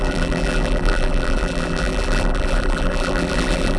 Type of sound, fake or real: fake